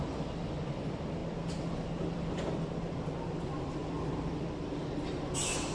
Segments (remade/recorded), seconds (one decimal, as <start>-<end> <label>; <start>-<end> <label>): 0.0-5.7 recorded